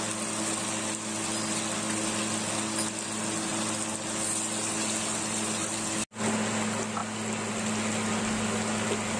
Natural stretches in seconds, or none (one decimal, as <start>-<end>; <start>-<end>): 0.0-9.2